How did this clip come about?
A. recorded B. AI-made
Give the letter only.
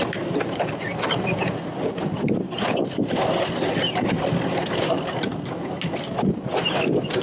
A